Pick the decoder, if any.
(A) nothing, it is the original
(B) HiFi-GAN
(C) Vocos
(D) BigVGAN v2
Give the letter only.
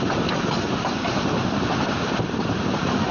A